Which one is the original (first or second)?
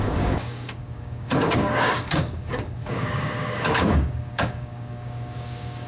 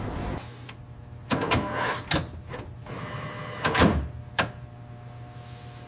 second